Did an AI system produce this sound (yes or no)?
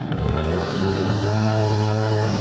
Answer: yes